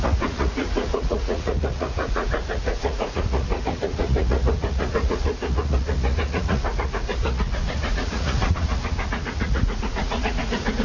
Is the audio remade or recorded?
remade